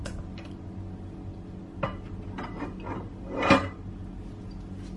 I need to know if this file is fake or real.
real